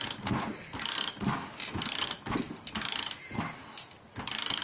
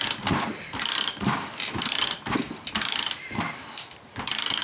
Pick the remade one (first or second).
second